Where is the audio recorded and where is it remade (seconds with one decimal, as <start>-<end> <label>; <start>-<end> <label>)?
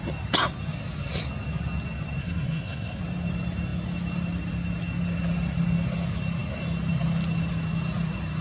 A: 0.0-2.2 recorded; 2.2-3.0 remade; 3.0-8.4 recorded